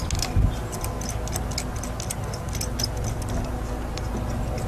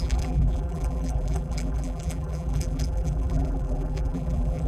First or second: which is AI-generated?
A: second